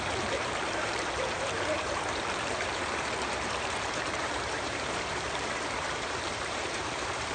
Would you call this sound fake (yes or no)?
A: yes